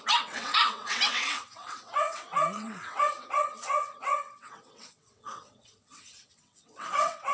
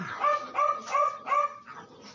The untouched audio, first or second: second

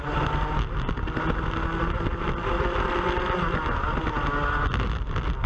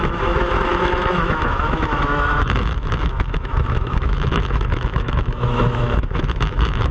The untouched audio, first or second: first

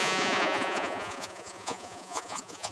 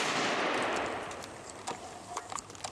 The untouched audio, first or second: second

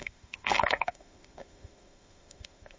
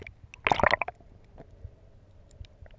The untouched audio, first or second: second